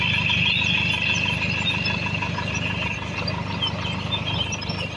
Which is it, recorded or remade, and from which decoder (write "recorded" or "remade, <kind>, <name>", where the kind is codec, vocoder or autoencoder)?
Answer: recorded